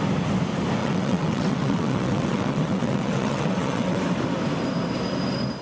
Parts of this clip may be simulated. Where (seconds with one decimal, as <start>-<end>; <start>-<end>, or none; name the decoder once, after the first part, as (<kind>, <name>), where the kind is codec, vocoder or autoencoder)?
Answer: 0.8-4.0 (vocoder, WaveNeXt)